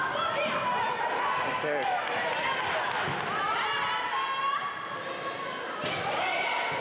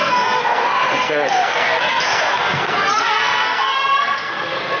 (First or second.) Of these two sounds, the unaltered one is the first